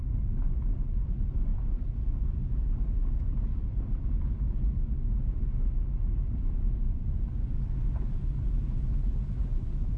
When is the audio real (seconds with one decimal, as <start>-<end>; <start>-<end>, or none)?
2.4-6.1